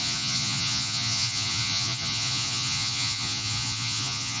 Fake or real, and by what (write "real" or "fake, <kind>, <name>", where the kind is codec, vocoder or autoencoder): fake, vocoder, Vocos